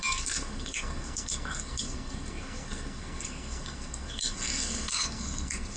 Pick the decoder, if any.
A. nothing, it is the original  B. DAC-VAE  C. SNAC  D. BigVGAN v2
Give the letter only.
C